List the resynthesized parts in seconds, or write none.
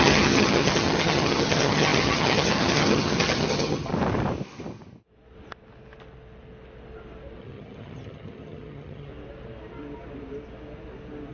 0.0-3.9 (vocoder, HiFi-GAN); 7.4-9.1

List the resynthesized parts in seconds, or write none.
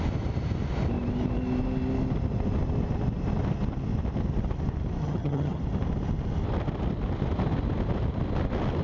5.0-5.6 (vocoder, HiFi-GAN)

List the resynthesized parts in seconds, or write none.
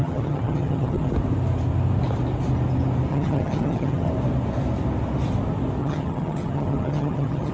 0.0-1.1 (vocoder, HiFi-GAN); 3.1-4.1; 5.8-7.5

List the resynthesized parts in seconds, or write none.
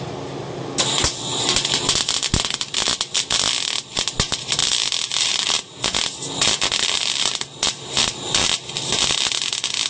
none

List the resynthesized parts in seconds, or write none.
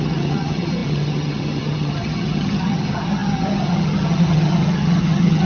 0.0-5.5 (vocoder, HiFi-GAN)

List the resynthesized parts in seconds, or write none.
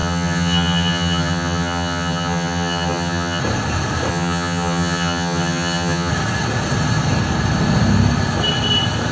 0.0-3.4 (vocoder, HiFi-GAN); 4.1-6.1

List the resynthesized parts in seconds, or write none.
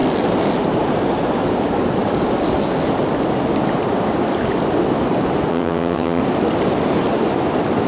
5.5-6.2 (vocoder, HiFi-GAN)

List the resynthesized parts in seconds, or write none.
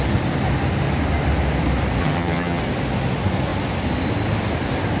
2.0-2.6 (vocoder, HiFi-GAN)